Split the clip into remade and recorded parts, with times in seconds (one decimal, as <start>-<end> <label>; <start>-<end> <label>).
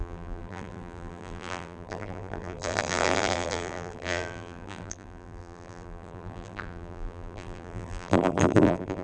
0.0-9.0 remade